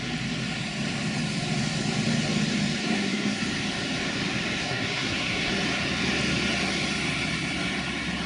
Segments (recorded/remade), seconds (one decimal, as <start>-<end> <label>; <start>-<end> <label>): 0.0-2.8 recorded; 2.8-3.4 remade; 3.4-4.6 recorded; 4.6-5.5 remade; 5.5-8.3 recorded